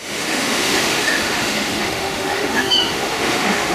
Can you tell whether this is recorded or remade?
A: remade